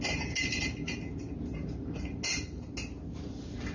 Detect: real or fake real